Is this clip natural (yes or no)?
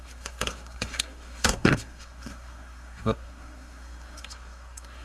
no